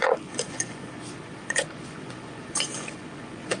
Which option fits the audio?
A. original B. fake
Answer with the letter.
B